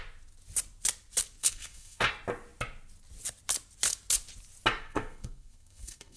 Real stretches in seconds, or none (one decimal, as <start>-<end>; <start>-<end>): 0.0-1.4; 2.1-4.8